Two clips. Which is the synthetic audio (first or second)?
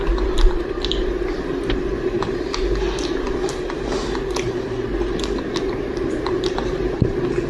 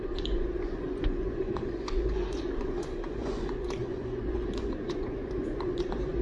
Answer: second